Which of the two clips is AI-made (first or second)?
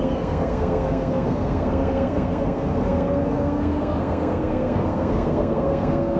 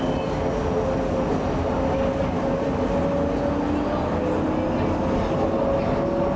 first